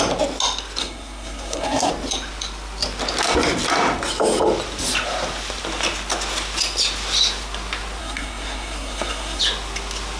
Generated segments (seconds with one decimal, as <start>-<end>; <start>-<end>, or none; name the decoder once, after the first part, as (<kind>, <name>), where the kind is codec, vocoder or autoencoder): 0.8-1.9 (codec, SNAC); 8.0-9.4